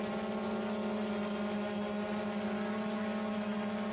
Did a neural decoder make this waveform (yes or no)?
no